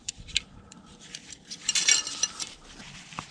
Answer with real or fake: fake